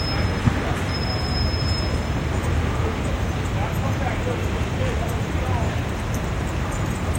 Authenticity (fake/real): fake